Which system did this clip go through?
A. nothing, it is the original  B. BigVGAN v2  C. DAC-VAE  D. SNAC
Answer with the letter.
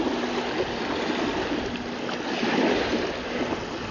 A